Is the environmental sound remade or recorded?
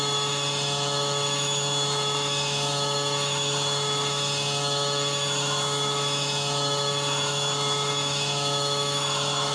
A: remade